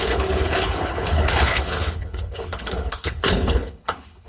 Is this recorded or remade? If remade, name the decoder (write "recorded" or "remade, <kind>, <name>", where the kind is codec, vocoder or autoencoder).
remade, codec, HILCodec